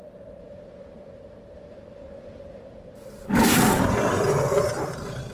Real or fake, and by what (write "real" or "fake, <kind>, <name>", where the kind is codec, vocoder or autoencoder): fake, vocoder, BigVGAN v2